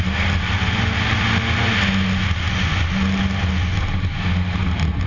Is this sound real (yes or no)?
yes